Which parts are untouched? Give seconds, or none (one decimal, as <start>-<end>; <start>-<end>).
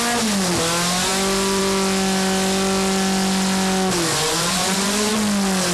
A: 0.0-4.1; 5.1-5.7